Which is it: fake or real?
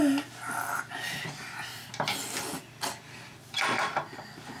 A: real